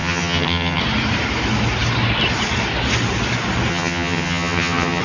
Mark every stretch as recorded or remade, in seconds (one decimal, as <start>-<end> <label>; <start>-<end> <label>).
0.0-0.8 remade; 0.8-3.7 recorded; 3.7-5.0 remade